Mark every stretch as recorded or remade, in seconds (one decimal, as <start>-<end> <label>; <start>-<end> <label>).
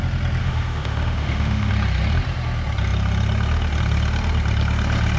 0.0-0.4 recorded; 0.4-1.7 remade; 1.7-5.2 recorded